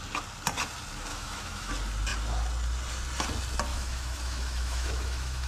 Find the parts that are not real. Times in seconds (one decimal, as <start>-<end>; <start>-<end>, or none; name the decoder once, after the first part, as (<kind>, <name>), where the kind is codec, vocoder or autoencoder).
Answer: 1.1-1.7 (autoencoder, DAC-VAE); 3.7-5.5